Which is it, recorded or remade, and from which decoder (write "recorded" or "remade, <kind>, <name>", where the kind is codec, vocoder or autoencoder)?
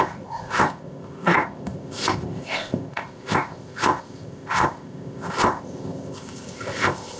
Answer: remade, codec, ZipCodec